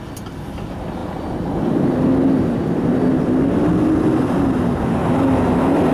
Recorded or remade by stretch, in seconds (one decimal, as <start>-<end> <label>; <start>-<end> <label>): 0.0-5.9 recorded